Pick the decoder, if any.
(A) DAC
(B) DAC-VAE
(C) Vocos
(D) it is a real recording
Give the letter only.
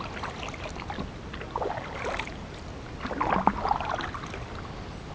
D